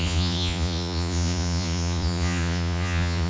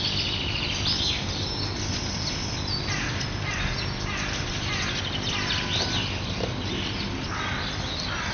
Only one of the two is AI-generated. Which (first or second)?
first